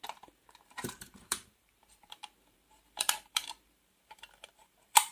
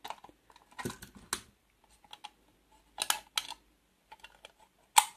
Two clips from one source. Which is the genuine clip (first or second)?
second